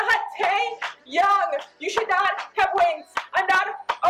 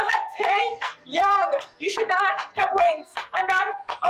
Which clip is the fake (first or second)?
second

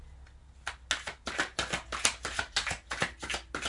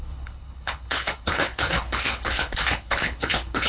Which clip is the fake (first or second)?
second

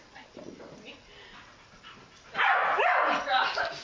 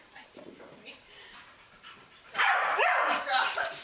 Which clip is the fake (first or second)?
second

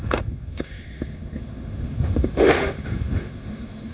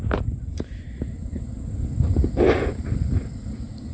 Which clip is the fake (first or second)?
first